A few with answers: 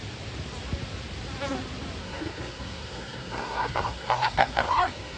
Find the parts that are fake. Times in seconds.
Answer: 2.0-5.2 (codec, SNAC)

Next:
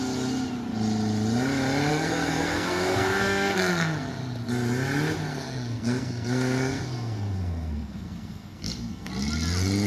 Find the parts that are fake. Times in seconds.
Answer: 1.9-4.1 (codec, SNAC); 5.3-9.1